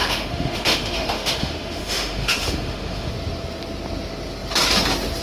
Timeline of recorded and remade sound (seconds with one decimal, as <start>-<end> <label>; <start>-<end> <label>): 0.0-3.1 remade; 3.1-5.2 recorded